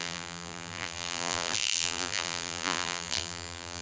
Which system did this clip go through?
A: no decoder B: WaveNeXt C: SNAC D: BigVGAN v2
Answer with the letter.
D